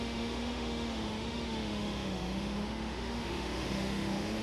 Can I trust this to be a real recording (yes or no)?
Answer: no